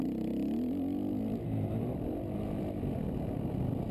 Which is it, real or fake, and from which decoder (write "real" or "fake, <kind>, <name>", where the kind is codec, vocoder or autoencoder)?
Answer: real